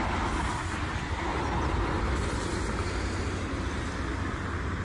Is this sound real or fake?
real